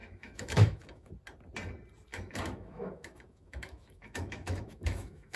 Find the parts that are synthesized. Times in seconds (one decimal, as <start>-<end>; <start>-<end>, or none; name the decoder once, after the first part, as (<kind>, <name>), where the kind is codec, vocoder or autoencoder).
0.0-1.1 (autoencoder, DAC-VAE); 2.1-5.4